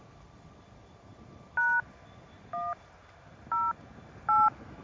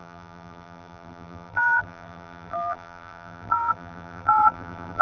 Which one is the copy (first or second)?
second